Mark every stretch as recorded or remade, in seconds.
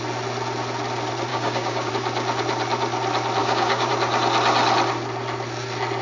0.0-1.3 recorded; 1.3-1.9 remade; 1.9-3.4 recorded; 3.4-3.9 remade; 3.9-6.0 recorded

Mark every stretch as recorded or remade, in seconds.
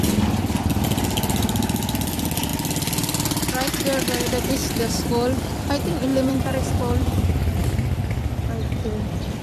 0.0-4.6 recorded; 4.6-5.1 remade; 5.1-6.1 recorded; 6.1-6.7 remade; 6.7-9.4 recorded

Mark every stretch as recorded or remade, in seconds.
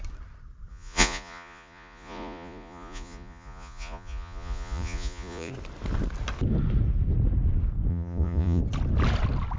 0.0-0.7 recorded; 0.7-5.5 remade; 5.5-7.9 recorded; 7.9-8.6 remade; 8.6-9.6 recorded